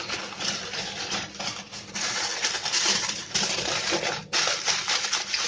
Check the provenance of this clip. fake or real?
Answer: real